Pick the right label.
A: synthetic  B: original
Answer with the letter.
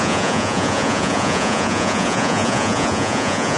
A